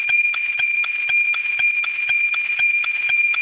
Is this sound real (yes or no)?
no